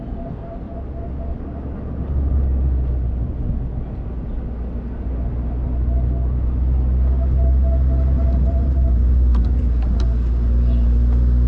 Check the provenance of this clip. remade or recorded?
recorded